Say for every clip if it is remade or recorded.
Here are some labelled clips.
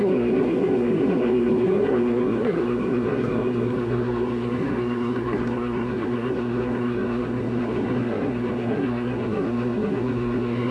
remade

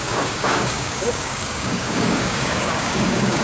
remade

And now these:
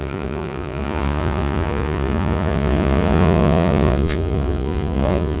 remade